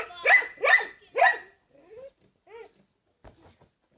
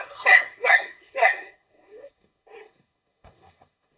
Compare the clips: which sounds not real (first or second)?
second